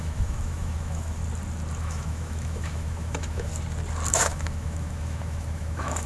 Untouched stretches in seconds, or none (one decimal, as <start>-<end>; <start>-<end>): 1.2-1.8; 3.5-4.1